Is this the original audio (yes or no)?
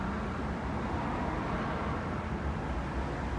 yes